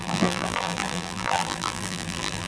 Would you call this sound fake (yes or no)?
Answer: yes